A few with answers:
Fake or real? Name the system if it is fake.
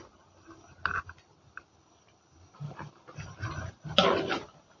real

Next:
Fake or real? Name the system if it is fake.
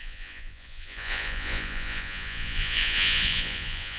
fake, vocoder, Vocos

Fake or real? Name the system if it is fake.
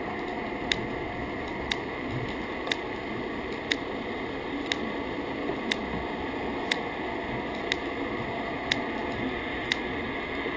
real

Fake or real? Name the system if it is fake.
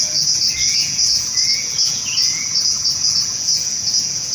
fake, vocoder, Vocos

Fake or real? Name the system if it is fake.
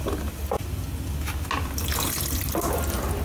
real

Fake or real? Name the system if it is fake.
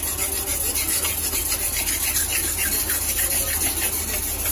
real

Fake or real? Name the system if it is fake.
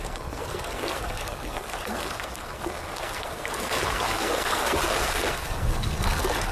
fake, codec, SNAC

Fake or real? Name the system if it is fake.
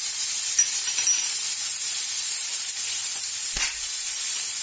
real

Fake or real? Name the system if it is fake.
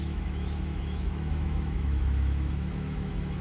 fake, autoencoder, DAC-VAE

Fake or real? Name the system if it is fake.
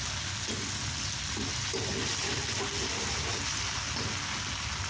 real